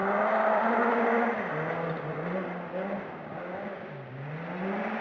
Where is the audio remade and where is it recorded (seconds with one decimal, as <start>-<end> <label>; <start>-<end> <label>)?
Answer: 0.0-5.0 recorded